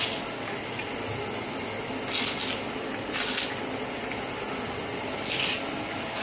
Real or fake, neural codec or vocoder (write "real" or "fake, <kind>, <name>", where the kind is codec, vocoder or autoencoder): real